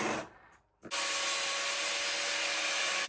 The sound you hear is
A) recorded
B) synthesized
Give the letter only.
A